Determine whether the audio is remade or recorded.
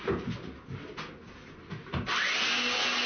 recorded